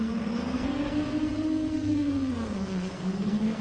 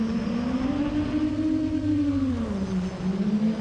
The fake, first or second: first